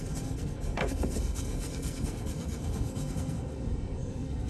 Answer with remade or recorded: remade